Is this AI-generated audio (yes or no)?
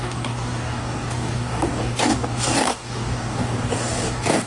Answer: yes